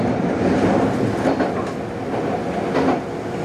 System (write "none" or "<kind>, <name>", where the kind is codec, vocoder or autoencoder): none